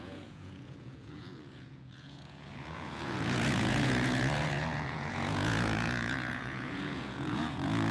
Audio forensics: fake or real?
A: fake